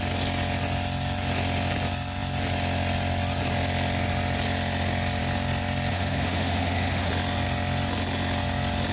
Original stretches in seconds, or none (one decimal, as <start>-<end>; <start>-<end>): 0.0-5.9; 7.1-8.9